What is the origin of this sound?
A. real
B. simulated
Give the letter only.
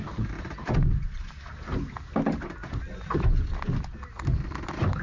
A